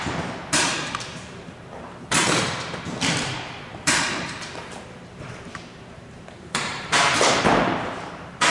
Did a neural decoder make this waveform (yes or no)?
yes